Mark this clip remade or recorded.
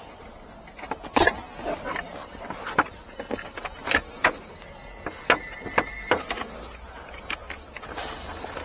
recorded